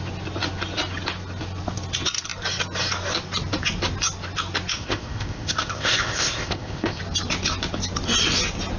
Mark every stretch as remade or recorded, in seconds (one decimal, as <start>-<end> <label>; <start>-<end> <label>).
0.0-4.7 recorded; 4.7-7.0 remade; 7.0-8.8 recorded